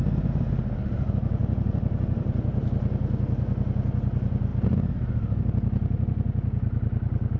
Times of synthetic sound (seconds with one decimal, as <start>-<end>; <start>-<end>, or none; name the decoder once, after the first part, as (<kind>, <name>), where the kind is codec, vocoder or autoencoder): 1.4-2.6 (vocoder, BigVGAN v2)